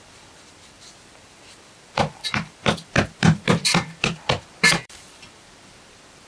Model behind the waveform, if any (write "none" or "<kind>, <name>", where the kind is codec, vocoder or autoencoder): vocoder, BigVGAN v2